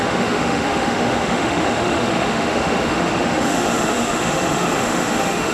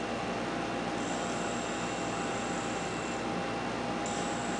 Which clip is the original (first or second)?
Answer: second